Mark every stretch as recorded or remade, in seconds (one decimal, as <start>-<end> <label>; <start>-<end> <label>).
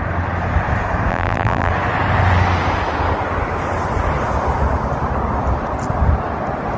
0.0-1.1 recorded; 1.1-1.7 remade; 1.7-6.8 recorded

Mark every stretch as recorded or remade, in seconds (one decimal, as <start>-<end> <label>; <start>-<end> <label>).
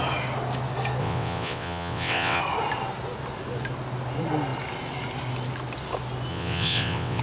0.0-1.0 recorded; 1.0-2.4 remade; 2.4-6.3 recorded; 6.3-7.2 remade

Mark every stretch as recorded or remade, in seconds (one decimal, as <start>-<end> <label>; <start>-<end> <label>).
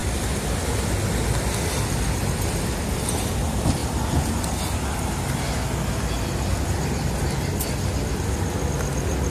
0.0-9.3 recorded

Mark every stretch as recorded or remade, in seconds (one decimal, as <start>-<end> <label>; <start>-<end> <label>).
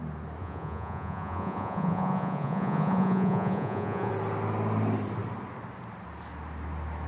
0.0-0.4 recorded; 0.4-4.1 remade; 4.1-7.1 recorded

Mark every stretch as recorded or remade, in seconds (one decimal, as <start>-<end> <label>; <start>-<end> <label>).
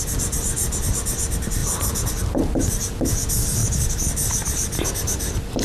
0.0-5.6 recorded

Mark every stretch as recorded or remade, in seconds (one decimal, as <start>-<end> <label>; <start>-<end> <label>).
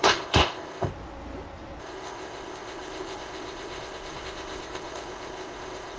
0.0-0.9 remade; 0.9-1.8 recorded; 1.8-6.0 remade